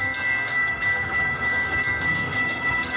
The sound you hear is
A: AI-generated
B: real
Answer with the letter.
A